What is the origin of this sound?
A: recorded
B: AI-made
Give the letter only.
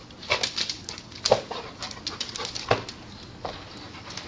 A